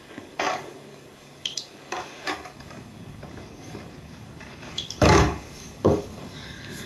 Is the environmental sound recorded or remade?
remade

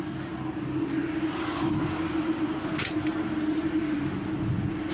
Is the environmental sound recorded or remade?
recorded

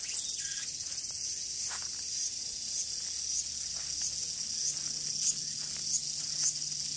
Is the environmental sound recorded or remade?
recorded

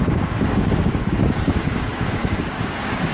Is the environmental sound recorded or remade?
remade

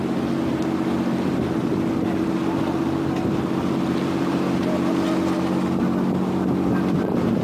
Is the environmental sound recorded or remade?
recorded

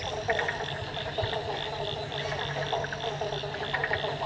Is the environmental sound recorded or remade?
recorded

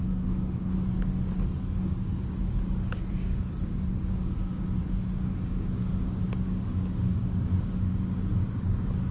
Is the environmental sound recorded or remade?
remade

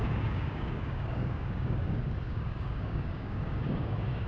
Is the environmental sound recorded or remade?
remade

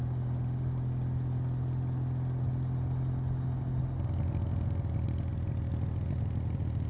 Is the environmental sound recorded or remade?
recorded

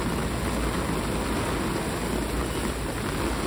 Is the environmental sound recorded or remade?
recorded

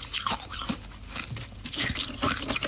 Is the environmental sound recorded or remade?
recorded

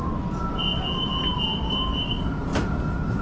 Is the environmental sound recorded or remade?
recorded